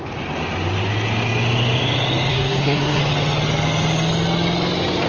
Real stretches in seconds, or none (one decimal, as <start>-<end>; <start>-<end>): 0.0-2.3; 3.0-5.1